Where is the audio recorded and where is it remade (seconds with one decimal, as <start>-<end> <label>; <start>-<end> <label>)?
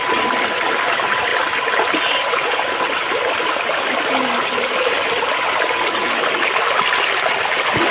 0.0-7.9 recorded